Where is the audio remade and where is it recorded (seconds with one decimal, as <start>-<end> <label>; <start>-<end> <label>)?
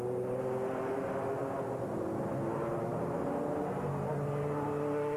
0.0-5.2 recorded